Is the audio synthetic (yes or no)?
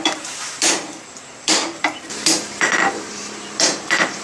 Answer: yes